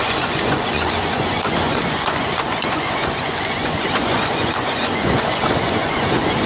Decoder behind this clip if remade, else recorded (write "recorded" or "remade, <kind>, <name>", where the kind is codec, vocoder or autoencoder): remade, vocoder, Vocos